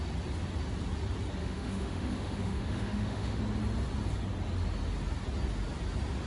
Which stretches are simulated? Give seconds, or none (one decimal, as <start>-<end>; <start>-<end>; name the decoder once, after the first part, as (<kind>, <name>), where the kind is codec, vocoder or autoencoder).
1.4-3.4 (autoencoder, DAC-VAE)